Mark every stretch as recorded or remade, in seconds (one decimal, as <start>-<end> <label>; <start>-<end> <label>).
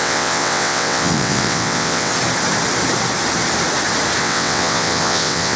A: 0.0-2.1 remade; 2.1-4.2 recorded; 4.2-5.6 remade